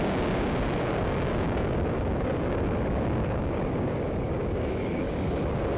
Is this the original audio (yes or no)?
no